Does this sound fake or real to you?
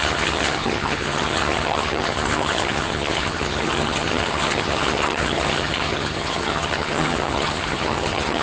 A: fake